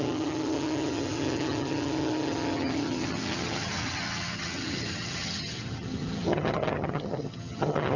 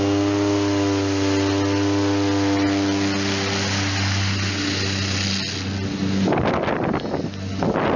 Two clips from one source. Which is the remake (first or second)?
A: first